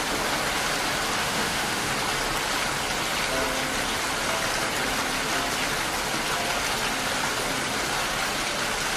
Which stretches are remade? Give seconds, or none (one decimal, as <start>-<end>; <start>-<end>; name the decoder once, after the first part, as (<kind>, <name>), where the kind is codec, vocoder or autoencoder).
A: 1.2-1.9 (autoencoder, DAC-VAE)